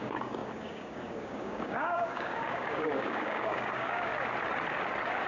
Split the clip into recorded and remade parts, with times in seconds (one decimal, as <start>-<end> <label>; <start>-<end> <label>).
0.0-4.1 remade; 4.1-5.3 recorded